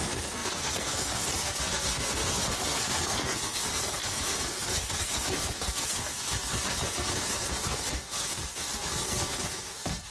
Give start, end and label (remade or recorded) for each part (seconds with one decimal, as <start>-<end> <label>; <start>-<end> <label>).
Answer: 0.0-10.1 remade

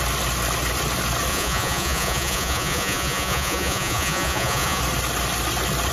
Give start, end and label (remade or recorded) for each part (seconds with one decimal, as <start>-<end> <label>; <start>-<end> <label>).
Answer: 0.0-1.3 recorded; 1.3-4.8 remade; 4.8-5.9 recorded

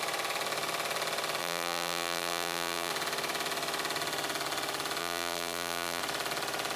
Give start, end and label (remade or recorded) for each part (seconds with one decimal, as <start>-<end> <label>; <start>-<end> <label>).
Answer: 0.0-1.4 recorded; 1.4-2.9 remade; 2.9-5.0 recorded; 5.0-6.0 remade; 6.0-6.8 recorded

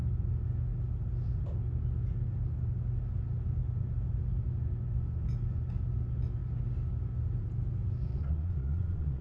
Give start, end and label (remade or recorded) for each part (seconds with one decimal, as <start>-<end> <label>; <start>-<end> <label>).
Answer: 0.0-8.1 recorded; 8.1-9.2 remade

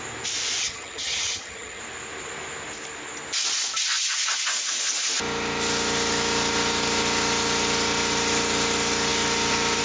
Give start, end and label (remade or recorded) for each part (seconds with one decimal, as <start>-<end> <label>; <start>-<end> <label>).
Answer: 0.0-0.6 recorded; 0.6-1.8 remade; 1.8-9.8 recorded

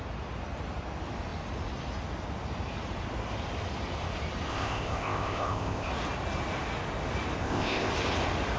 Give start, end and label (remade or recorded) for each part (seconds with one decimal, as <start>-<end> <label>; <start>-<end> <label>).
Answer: 0.0-4.5 recorded; 4.5-5.9 remade; 5.9-7.4 recorded; 7.4-7.9 remade; 7.9-8.6 recorded

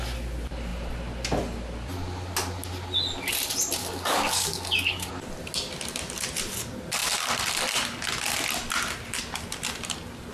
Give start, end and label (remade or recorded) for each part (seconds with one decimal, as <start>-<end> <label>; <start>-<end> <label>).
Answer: 0.0-3.8 recorded; 3.8-5.1 remade; 5.1-10.3 recorded

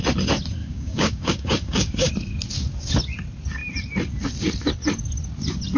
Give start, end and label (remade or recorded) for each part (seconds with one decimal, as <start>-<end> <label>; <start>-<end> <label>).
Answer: 0.0-0.6 recorded; 0.6-2.1 remade; 2.1-5.8 recorded